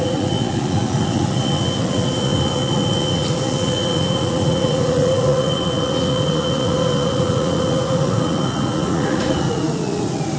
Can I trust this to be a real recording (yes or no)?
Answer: no